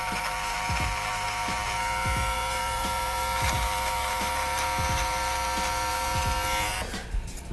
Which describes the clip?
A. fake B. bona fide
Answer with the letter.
A